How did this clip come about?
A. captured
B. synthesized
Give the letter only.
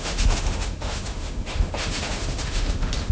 B